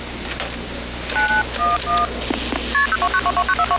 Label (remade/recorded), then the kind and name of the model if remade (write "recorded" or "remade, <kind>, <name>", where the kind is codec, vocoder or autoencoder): recorded